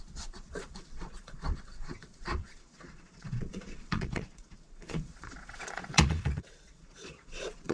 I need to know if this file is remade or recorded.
remade